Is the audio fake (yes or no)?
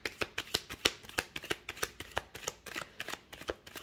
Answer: no